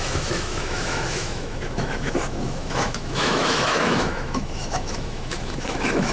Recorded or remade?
remade